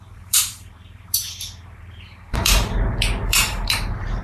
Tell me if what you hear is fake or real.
fake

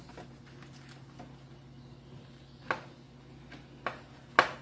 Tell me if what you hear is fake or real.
real